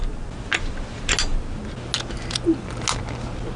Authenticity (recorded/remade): recorded